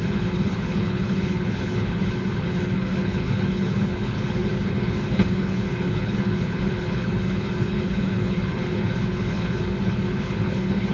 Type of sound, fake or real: fake